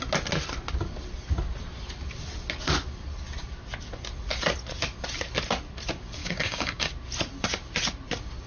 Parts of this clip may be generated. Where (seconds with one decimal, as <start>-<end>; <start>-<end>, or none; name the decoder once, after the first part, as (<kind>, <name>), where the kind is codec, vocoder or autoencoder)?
6.2-6.9 (codec, DAC)